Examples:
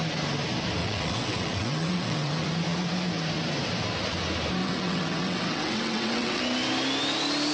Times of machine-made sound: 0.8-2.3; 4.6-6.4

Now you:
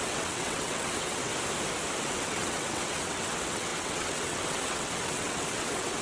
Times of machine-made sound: 0.0-1.3; 2.0-6.0

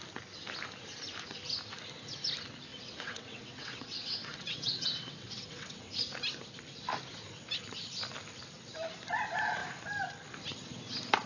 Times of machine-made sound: 2.7-5.9